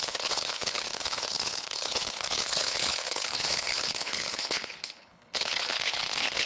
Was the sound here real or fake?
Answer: fake